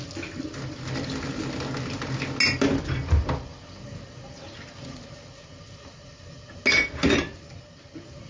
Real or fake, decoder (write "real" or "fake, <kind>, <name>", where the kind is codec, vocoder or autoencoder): real